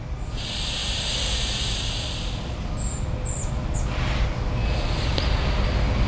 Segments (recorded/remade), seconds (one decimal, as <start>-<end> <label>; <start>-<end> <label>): 0.0-0.8 recorded; 0.8-4.5 remade; 4.5-6.1 recorded